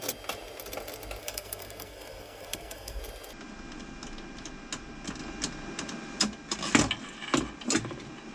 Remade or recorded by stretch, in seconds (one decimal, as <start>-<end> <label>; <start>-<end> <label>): 0.0-1.2 recorded; 1.2-3.0 remade; 3.0-8.3 recorded